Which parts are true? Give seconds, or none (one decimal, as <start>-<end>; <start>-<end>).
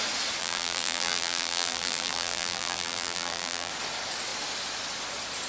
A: 0.0-0.4; 3.7-5.5